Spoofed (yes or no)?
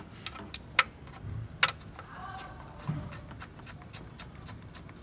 no